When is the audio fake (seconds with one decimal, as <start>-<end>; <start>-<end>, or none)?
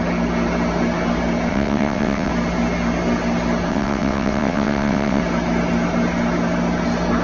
1.5-2.3; 3.7-5.2